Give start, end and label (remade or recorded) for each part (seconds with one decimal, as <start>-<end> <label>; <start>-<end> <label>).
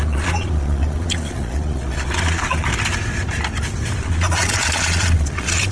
0.0-2.7 remade; 2.7-4.0 recorded; 4.0-5.7 remade